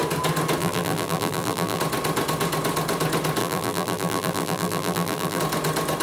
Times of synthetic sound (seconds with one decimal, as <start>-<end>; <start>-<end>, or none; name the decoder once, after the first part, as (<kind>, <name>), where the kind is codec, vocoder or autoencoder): 0.6-1.8 (vocoder, BigVGAN v2); 3.4-5.4